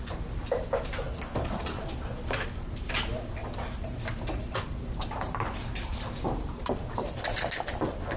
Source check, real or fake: fake